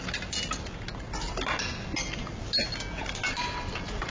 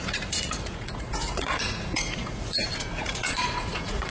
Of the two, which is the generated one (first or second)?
second